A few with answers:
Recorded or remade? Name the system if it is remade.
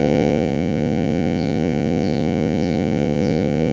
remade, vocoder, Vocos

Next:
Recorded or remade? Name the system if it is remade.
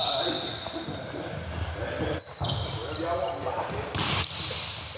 recorded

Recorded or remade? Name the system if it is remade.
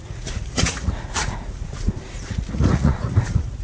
remade, vocoder, Vocos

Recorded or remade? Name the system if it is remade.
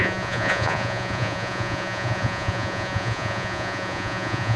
remade, vocoder, Vocos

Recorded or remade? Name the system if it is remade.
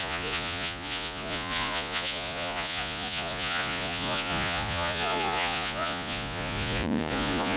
remade, vocoder, Vocos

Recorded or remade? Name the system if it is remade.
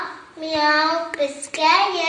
recorded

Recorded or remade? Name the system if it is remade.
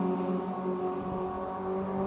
recorded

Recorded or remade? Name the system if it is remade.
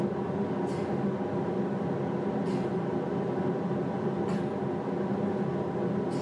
recorded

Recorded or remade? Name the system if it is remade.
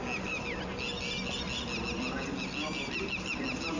recorded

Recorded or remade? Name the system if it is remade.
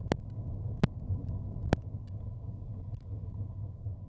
recorded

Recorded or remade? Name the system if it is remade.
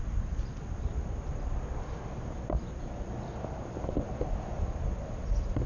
recorded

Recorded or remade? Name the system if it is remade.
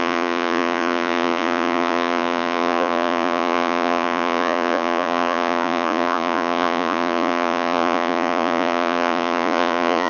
remade, vocoder, Vocos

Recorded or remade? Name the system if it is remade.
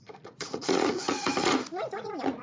remade, vocoder, Vocos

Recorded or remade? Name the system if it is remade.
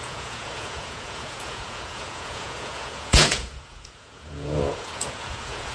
remade, vocoder, Vocos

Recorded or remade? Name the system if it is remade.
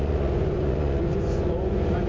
remade, vocoder, Vocos